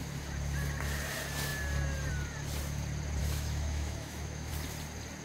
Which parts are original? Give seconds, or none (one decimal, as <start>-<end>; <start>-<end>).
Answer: 0.0-3.2; 4.5-5.2